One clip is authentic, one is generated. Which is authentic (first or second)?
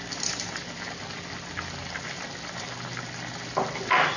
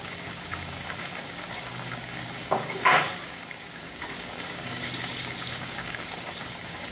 first